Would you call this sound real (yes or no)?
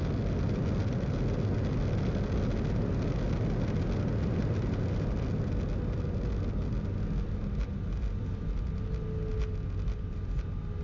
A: yes